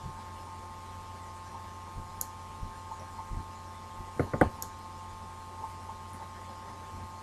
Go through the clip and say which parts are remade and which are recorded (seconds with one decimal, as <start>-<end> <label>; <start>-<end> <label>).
0.0-7.2 recorded